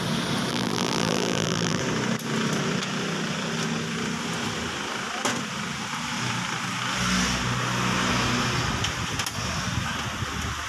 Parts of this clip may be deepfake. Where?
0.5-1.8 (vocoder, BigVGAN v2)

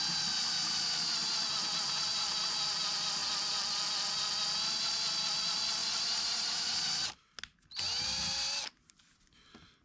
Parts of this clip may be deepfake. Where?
5.8-6.8 (vocoder, BigVGAN v2)

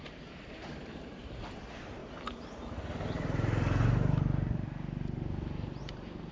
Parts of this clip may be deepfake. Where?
0.0-2.0 (vocoder, BigVGAN v2); 5.8-6.3